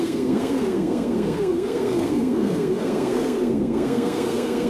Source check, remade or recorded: remade